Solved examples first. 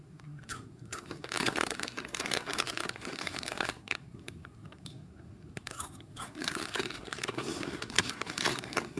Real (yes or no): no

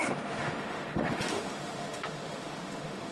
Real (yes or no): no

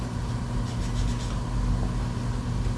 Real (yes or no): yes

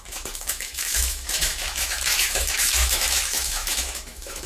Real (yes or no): no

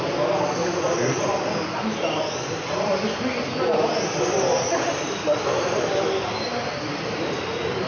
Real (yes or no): yes